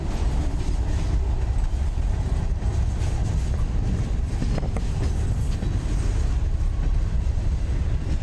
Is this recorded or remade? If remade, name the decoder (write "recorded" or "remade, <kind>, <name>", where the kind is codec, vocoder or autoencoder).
recorded